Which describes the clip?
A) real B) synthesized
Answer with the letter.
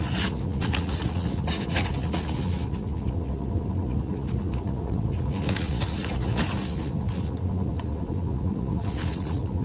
B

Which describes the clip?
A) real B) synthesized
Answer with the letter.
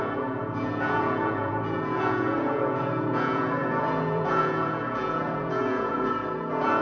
B